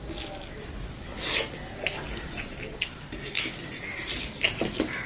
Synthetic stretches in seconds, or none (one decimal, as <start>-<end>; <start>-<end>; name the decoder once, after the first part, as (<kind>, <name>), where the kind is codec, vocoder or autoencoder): none